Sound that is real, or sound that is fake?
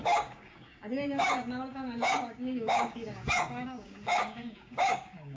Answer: fake